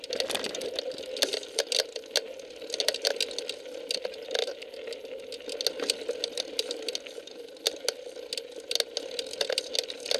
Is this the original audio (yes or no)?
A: yes